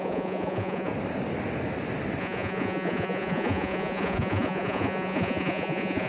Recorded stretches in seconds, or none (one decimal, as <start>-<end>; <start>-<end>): 0.9-2.2